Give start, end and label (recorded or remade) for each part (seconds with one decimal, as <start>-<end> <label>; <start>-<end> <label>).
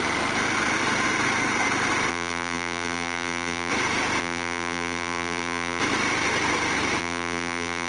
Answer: 0.0-2.1 recorded; 2.1-3.7 remade; 3.7-4.2 recorded; 4.2-5.8 remade; 5.8-7.0 recorded; 7.0-7.9 remade